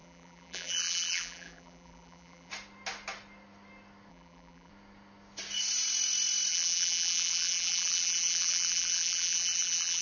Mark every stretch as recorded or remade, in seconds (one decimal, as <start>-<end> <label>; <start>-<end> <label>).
0.0-2.5 remade; 2.5-4.1 recorded; 4.1-4.7 remade; 4.7-6.5 recorded; 6.5-10.0 remade